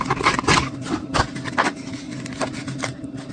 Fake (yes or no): no